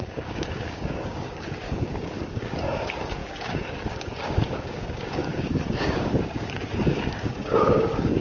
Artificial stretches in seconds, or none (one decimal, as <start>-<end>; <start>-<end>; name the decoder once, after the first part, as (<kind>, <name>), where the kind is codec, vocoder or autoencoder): 0.0-8.2 (codec, DAC)